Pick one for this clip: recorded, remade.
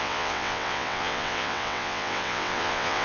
remade